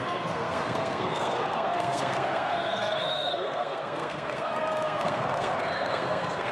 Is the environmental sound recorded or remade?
remade